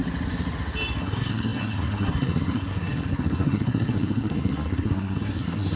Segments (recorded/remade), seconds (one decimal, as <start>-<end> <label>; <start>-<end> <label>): 0.0-1.0 recorded; 1.0-5.8 remade